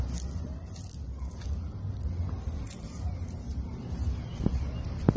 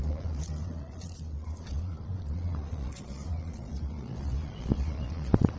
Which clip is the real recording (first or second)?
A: first